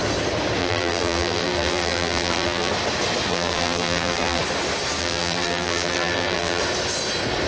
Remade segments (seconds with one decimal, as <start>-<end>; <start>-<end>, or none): 0.6-2.7; 3.3-4.4; 5.0-6.6